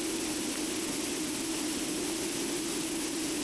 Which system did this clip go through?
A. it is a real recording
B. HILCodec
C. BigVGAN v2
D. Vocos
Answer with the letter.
A